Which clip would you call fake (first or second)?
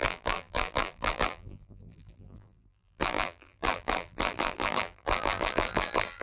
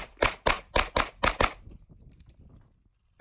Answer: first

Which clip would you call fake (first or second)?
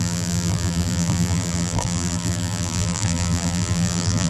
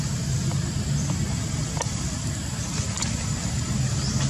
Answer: first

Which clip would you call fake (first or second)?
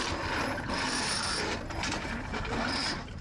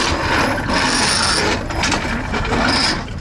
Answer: first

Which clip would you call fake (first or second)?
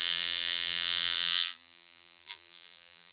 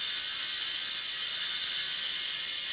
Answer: first